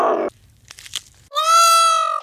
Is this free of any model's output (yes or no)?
yes